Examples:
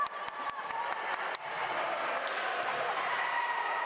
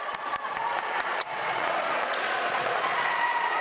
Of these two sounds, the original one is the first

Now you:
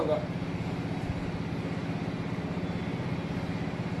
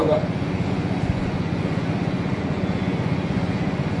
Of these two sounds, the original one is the first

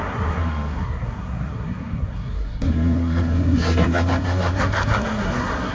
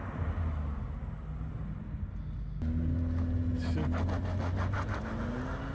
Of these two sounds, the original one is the second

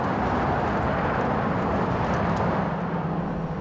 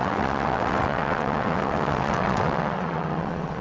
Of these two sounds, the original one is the first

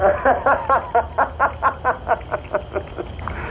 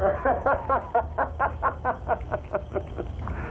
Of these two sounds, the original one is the first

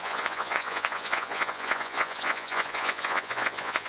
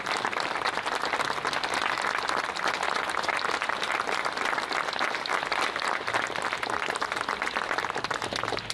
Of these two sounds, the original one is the second